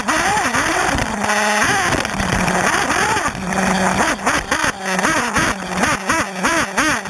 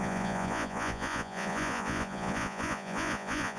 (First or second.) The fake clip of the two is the second